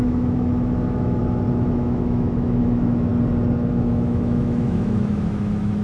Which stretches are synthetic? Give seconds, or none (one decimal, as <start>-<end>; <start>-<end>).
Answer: 0.0-1.2; 1.7-3.1; 3.7-5.8